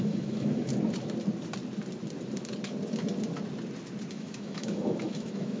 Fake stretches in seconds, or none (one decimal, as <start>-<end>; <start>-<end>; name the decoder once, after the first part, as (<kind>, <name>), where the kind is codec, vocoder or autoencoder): 0.0-0.7 (autoencoder, DAC-VAE); 4.1-5.6